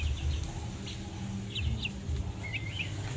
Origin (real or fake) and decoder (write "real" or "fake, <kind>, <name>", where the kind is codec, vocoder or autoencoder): real